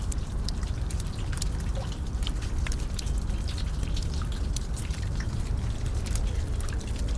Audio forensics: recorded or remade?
remade